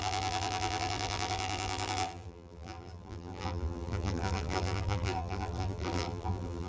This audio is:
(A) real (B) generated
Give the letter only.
B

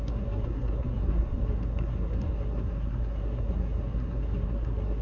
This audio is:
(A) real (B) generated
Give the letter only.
B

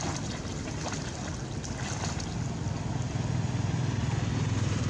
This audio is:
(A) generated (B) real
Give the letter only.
B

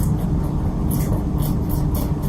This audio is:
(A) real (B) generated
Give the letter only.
A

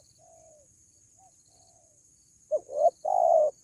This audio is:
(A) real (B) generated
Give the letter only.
A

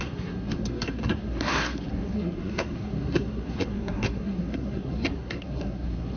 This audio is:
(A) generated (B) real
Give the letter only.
A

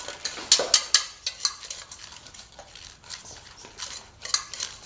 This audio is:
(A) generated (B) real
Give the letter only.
B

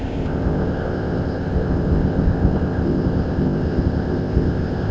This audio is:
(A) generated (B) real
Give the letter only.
A